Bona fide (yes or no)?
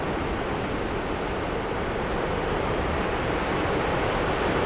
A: yes